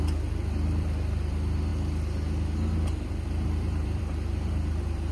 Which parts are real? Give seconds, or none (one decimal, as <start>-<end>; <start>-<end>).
1.7-3.1